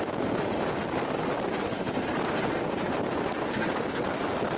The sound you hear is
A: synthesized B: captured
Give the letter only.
B